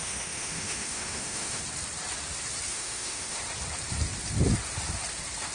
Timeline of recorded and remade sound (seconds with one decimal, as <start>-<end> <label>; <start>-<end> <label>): 0.0-1.6 remade; 1.6-2.7 recorded; 2.7-3.4 remade; 3.4-5.5 recorded